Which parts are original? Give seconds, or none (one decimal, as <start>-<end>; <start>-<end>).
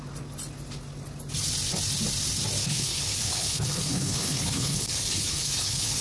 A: 0.0-2.6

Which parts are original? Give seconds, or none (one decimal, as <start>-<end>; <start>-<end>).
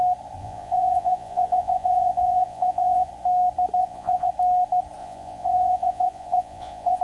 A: 0.0-0.4; 3.1-3.8; 4.3-5.0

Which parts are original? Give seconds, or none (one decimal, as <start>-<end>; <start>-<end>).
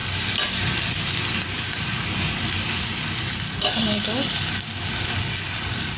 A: 0.0-6.0